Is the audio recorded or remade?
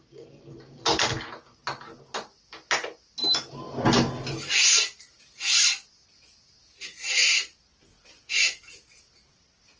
recorded